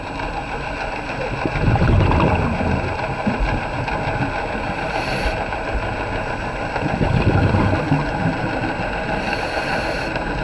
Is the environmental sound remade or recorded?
recorded